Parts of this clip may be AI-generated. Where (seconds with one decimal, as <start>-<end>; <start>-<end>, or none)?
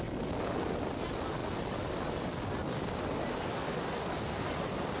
none